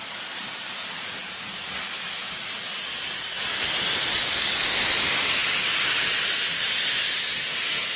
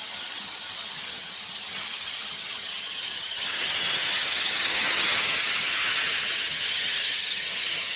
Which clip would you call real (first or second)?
first